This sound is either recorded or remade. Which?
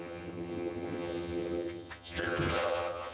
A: remade